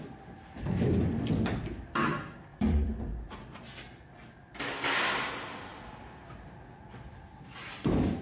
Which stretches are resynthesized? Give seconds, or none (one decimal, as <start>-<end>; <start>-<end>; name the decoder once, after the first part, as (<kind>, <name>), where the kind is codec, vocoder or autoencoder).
2.5-3.4 (vocoder, Vocos)